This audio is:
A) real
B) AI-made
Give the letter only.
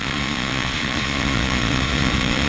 B